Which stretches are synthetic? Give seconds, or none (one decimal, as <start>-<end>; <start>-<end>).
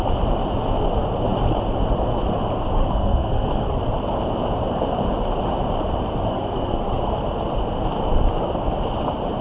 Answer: 2.8-3.8; 6.3-7.2